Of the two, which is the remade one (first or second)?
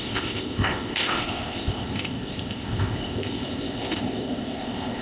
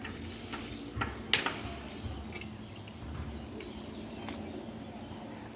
first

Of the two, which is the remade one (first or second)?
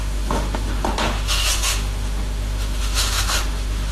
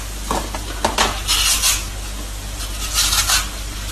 first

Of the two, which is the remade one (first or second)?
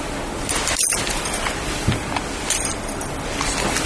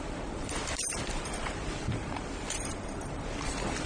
second